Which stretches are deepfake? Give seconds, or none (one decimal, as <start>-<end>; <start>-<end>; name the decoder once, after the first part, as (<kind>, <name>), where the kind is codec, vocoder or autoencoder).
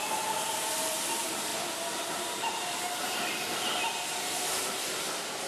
0.0-1.5 (vocoder, BigVGAN v2); 4.8-5.5